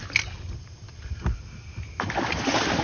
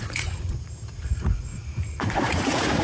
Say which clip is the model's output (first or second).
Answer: second